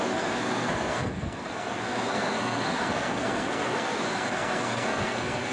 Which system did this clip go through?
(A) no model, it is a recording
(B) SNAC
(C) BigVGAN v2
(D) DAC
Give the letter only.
B